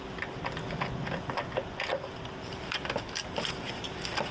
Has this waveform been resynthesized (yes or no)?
no